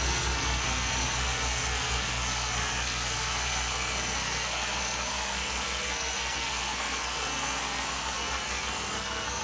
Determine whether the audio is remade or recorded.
remade